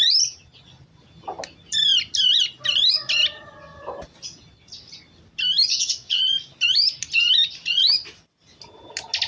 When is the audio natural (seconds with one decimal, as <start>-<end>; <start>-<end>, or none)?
0.0-5.7; 6.2-9.3